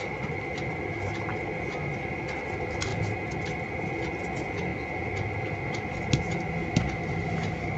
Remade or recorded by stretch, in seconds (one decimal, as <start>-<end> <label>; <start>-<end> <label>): 0.0-7.8 recorded